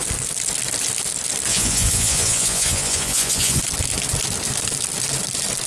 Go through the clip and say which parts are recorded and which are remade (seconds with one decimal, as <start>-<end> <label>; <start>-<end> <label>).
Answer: 0.0-1.5 recorded; 1.5-3.6 remade; 3.6-5.7 recorded